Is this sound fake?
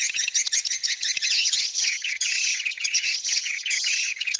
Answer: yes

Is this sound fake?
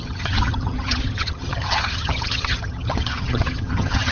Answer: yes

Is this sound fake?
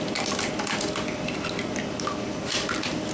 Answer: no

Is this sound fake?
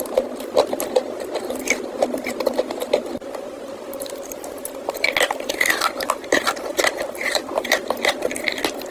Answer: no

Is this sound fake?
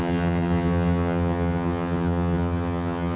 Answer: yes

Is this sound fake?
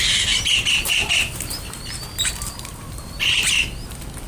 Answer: no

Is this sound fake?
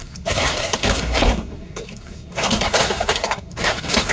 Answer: yes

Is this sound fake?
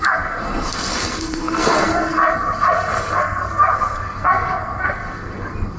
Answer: yes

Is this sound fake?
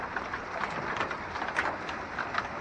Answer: no